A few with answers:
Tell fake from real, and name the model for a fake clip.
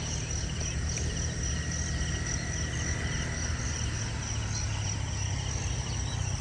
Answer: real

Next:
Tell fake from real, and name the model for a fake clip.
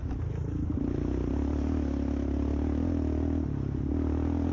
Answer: real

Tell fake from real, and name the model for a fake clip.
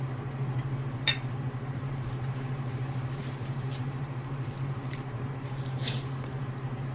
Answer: fake, vocoder, BigVGAN v2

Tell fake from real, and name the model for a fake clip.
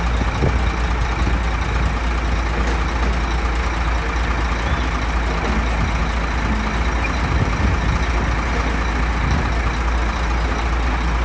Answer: real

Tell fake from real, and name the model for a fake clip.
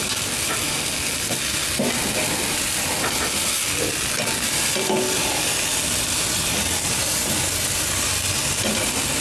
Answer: real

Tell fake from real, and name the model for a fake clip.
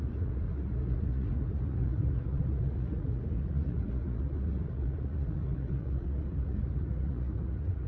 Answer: fake, vocoder, Vocos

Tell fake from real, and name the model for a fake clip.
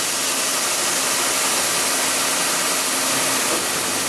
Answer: real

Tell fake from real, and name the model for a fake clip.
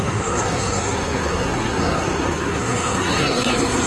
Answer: fake, codec, SNAC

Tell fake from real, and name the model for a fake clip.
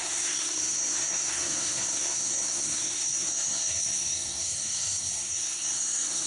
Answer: fake, codec, SNAC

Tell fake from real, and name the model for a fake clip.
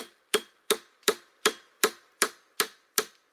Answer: fake, vocoder, BigVGAN v2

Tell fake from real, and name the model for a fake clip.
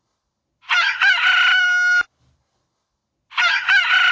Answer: real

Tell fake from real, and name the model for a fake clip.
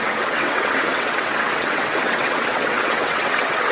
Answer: fake, vocoder, WaveNeXt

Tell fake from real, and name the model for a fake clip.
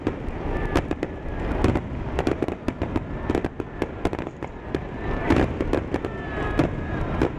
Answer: real